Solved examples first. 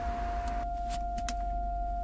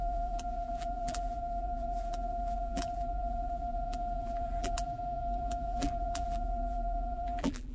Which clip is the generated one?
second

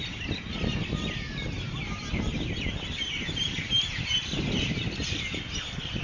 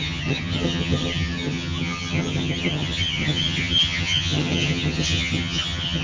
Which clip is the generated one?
second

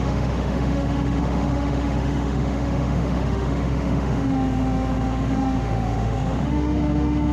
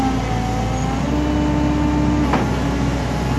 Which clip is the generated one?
first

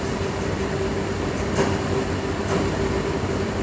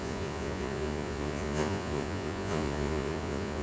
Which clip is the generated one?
second